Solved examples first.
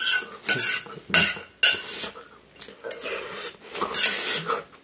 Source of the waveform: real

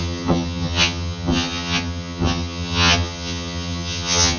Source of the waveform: fake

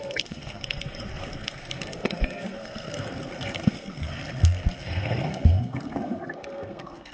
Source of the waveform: fake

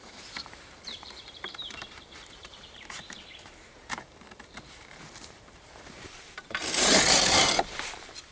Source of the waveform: fake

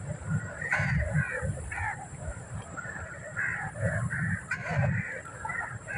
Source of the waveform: fake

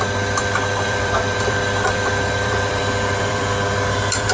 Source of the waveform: fake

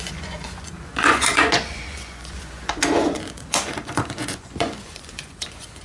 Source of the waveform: fake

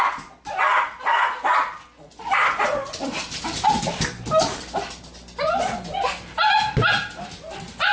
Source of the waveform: real